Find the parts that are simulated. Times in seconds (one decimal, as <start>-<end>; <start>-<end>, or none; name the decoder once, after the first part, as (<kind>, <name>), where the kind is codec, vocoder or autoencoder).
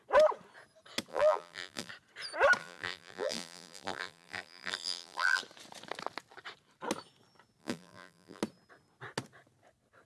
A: 1.1-1.9 (vocoder, BigVGAN v2); 2.6-5.4; 7.6-8.4